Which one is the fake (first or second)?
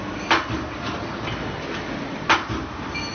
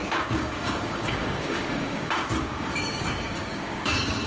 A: second